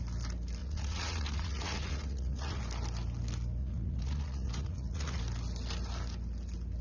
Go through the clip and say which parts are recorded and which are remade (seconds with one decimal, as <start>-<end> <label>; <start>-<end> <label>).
0.0-0.6 recorded; 0.6-2.6 remade; 2.6-3.6 recorded; 3.6-5.2 remade; 5.2-6.8 recorded